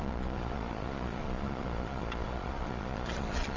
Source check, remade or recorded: remade